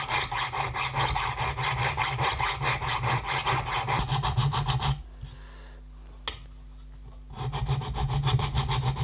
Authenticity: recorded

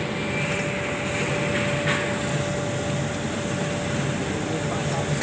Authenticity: recorded